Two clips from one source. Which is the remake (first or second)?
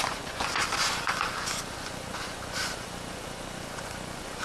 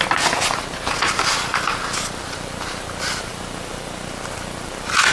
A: first